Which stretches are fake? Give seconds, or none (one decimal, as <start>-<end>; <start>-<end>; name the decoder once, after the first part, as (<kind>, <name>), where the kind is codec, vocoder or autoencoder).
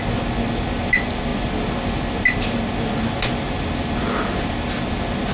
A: none